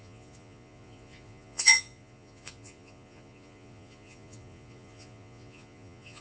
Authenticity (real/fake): fake